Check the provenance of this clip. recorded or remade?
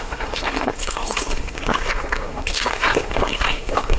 remade